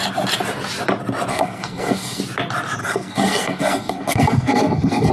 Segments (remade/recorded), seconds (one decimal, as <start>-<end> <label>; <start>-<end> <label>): 0.0-1.3 recorded; 1.3-2.2 remade; 2.2-2.8 recorded; 2.8-5.1 remade